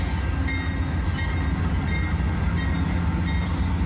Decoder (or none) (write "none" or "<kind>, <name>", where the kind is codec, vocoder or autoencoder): none